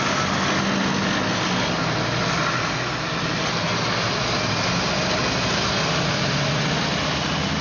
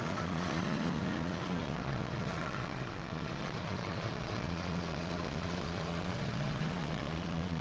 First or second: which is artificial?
second